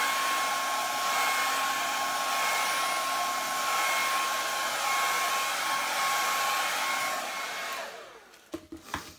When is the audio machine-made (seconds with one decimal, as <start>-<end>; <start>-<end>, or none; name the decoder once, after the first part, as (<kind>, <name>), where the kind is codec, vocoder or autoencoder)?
none